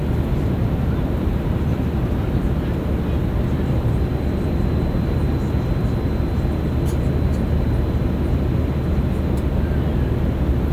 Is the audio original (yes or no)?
yes